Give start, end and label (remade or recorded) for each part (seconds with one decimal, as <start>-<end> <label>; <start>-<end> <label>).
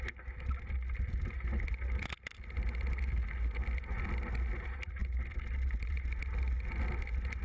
0.0-7.4 recorded